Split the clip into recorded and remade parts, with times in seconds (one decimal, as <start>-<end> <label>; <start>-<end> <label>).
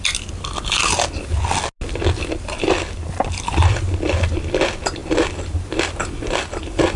0.0-7.0 recorded